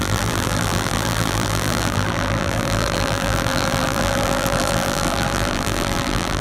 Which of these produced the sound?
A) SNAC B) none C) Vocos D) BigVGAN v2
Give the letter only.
D